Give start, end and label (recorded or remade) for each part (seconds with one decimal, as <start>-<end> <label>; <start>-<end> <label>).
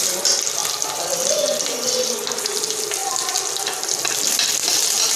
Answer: 0.0-0.6 recorded; 0.6-1.2 remade; 1.2-5.2 recorded